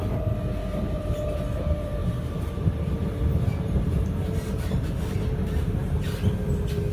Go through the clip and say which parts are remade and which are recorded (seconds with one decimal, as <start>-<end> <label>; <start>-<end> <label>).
0.0-0.6 recorded; 0.6-1.2 remade; 1.2-2.0 recorded; 2.0-6.1 remade; 6.1-6.9 recorded